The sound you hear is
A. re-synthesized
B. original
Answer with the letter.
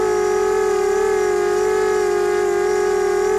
B